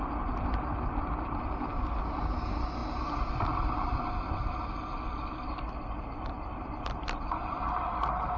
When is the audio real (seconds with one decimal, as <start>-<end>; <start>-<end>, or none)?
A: 0.0-8.4